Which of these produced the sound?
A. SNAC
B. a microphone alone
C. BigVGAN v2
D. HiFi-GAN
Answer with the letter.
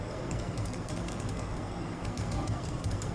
A